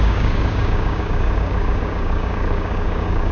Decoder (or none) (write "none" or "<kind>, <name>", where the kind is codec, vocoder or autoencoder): codec, DAC